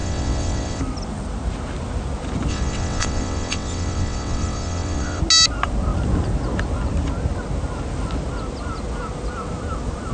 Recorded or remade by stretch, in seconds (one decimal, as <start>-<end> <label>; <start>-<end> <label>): 0.0-0.8 remade; 0.8-2.5 recorded; 2.5-5.2 remade; 5.2-10.1 recorded